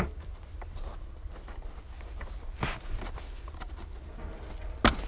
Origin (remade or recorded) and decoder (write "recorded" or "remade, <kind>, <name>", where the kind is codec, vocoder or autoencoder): recorded